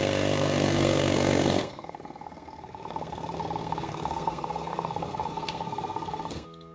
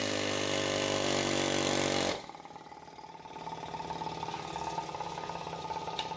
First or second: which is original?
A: second